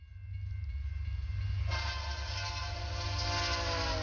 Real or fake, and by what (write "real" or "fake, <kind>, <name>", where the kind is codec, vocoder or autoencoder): real